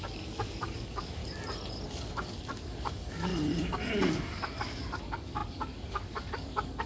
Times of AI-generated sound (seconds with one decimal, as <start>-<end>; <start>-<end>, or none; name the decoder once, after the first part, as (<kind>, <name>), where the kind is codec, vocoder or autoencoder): 0.0-1.2 (codec, DAC); 1.9-3.3; 3.9-6.9